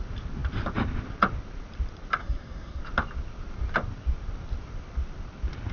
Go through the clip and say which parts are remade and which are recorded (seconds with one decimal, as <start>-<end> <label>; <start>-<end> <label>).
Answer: 0.0-2.2 recorded; 2.2-2.8 remade; 2.8-5.7 recorded